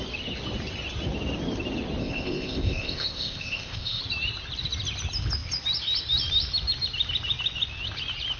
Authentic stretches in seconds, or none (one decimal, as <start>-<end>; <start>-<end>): 0.0-2.0; 4.0-8.4